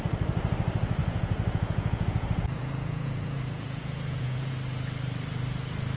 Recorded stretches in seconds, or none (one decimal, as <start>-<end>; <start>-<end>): 0.0-1.0; 4.5-6.0